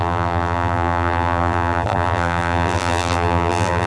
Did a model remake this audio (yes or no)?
yes